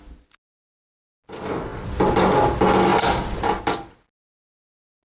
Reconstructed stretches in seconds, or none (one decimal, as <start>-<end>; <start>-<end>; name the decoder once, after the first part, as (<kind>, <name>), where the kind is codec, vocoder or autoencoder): none